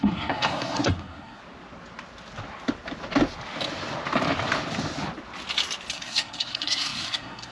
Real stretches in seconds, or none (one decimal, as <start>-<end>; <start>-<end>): 1.4-5.9